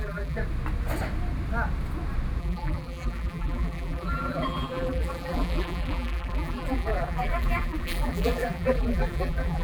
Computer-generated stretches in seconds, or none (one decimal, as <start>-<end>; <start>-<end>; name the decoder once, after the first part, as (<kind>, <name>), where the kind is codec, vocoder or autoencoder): 0.0-0.4 (vocoder, BigVGAN v2); 2.4-9.6

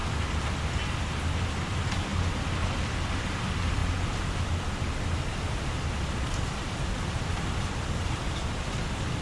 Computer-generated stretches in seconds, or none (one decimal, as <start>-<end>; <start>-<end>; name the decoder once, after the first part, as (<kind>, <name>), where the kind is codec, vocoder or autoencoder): 1.7-3.8 (vocoder, BigVGAN v2); 6.3-9.2